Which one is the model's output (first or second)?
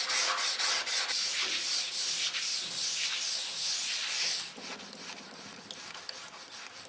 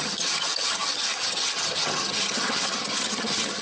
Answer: second